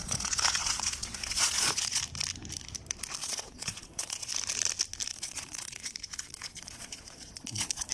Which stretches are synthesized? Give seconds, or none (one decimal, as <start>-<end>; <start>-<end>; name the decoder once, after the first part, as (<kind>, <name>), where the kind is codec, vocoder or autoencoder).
0.0-2.0 (vocoder, Vocos); 3.2-4.3; 5.1-7.9